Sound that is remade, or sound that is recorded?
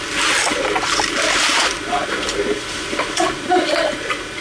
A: recorded